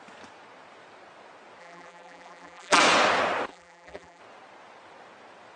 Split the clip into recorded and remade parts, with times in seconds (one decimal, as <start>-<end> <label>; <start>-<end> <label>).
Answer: 0.0-1.6 recorded; 1.6-2.8 remade; 2.8-3.5 recorded; 3.5-4.2 remade; 4.2-5.6 recorded